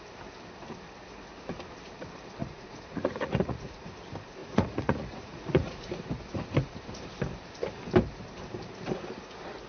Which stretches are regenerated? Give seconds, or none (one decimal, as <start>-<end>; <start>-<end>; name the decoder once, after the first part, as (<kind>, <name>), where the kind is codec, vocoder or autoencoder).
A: 2.4-3.9 (vocoder, Vocos); 4.4-5.9